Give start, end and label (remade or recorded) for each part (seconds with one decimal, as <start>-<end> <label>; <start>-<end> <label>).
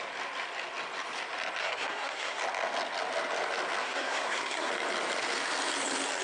0.0-1.6 recorded; 1.6-2.4 remade; 2.4-3.8 recorded; 3.8-4.7 remade; 4.7-6.2 recorded